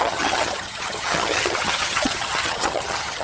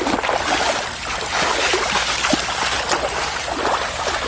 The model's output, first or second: first